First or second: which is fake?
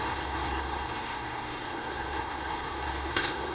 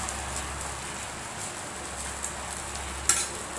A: first